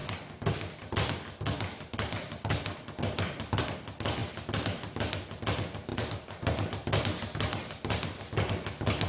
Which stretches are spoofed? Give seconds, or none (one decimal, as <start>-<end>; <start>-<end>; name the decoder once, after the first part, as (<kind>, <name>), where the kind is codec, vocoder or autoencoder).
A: 5.9-6.7 (vocoder, BigVGAN v2)